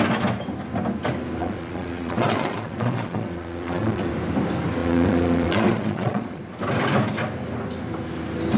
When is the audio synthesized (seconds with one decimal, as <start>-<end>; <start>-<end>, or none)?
1.4-4.1; 4.8-6.4